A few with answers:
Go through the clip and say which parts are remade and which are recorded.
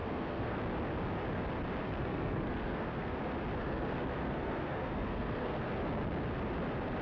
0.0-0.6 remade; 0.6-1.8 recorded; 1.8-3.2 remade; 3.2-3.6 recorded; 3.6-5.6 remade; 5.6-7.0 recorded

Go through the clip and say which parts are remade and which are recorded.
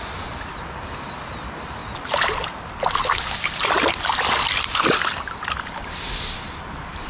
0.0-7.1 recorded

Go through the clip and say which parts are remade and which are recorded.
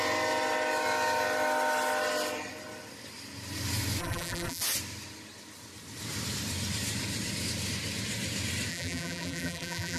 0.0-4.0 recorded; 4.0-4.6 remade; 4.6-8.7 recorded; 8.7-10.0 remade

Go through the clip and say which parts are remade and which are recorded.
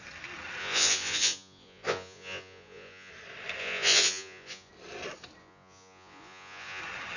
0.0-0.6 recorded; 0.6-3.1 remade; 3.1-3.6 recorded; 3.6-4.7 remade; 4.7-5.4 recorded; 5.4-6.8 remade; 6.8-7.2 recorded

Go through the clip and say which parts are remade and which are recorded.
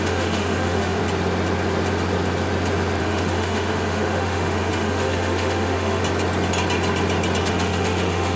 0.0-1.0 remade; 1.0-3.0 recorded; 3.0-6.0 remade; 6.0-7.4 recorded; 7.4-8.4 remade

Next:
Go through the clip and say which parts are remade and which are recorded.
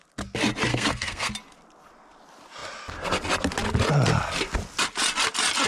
0.0-0.7 recorded; 0.7-1.3 remade; 1.3-5.7 recorded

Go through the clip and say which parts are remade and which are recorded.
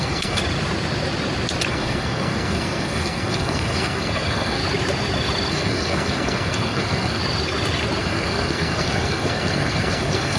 0.0-0.4 remade; 0.4-1.7 recorded; 1.7-4.6 remade; 4.6-5.5 recorded; 5.5-7.2 remade; 7.2-8.0 recorded; 8.0-10.4 remade